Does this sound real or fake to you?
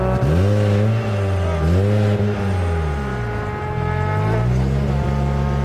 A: real